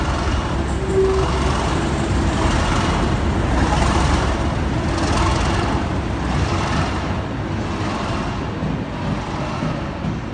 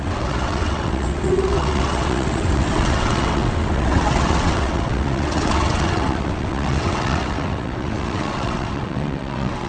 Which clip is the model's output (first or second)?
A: second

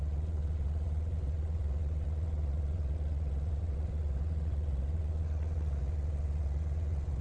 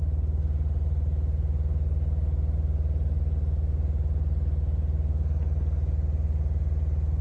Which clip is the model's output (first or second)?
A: first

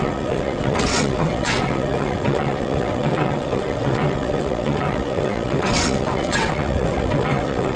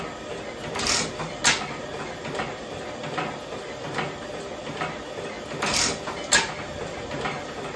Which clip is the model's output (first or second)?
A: first